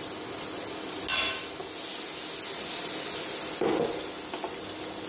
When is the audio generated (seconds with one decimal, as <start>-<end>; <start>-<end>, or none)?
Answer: none